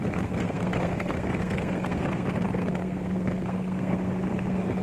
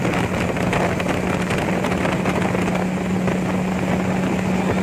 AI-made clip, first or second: first